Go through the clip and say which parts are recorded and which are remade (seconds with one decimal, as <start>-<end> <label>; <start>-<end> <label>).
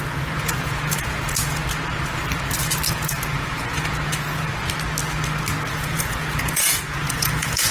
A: 0.0-1.6 remade; 1.6-2.9 recorded; 2.9-4.5 remade; 4.5-5.7 recorded; 5.7-7.7 remade